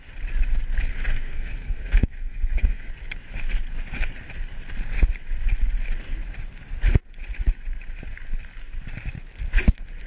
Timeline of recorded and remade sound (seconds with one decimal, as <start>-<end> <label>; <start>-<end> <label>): 0.0-0.9 recorded; 0.9-2.9 remade; 2.9-10.1 recorded